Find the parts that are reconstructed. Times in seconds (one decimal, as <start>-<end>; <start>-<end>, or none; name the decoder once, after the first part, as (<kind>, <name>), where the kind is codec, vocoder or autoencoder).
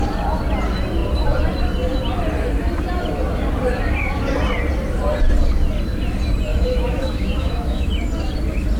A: 6.5-7.9 (autoencoder, DAC-VAE)